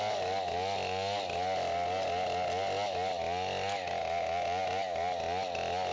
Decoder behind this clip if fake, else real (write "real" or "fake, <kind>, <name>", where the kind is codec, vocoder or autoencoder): real